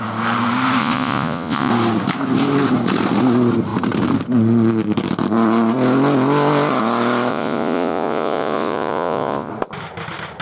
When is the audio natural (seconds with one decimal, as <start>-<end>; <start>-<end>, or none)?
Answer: 0.0-0.8; 1.7-7.3; 9.5-10.4